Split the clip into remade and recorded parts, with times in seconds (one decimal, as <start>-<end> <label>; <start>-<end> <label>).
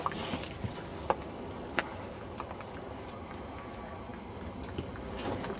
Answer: 0.0-5.6 recorded